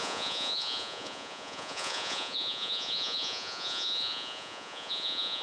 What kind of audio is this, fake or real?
fake